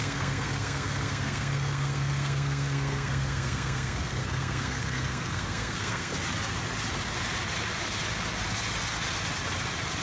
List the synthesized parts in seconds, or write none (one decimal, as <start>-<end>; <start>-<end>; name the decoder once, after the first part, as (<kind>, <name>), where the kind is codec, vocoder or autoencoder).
0.0-6.1 (codec, SNAC)